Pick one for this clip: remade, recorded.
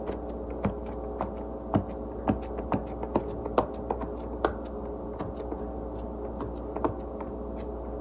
recorded